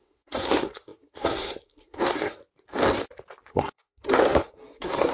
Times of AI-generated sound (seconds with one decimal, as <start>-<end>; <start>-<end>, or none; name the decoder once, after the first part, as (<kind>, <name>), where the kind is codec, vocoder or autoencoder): 0.0-2.4 (codec, SNAC); 3.5-5.1